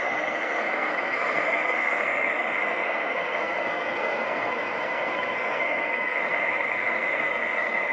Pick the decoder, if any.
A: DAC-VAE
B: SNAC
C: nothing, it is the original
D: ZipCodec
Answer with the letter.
B